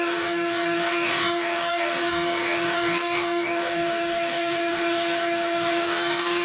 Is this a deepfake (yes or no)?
yes